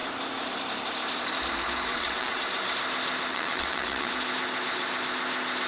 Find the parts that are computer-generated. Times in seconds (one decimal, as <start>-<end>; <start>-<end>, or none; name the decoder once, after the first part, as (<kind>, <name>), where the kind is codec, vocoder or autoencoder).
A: 1.9-2.4 (vocoder, WaveNeXt); 3.3-4.1